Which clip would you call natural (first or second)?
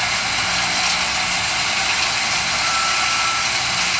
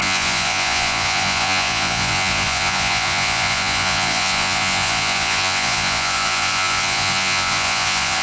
first